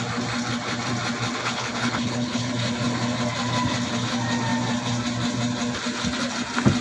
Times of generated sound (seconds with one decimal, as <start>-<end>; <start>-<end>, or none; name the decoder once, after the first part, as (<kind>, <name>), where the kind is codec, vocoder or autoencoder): 1.4-2.5 (codec, HILCodec)

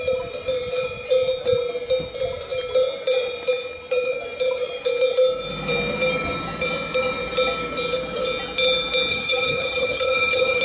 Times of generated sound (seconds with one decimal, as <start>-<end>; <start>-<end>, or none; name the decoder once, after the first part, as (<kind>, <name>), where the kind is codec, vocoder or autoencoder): 9.1-10.6 (vocoder, HiFi-GAN)